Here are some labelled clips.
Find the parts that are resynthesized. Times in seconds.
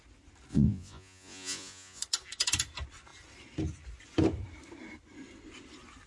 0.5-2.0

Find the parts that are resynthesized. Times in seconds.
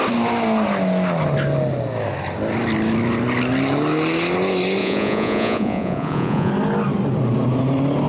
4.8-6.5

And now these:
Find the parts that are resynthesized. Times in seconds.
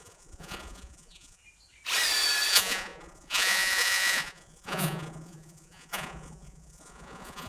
0.0-1.4; 2.5-7.5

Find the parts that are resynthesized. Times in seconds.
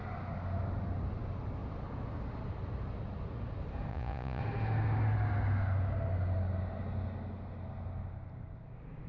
3.9-4.4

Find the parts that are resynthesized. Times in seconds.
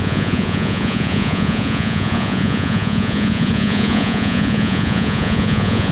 0.0-5.9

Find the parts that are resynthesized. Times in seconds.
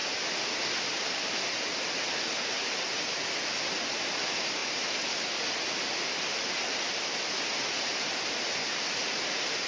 none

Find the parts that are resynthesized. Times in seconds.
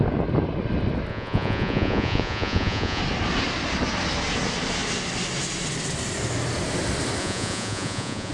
1.1-3.0; 7.2-8.3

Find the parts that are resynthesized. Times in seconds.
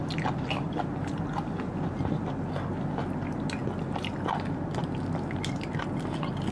none